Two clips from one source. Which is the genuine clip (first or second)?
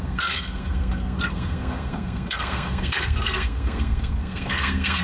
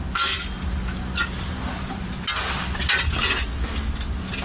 second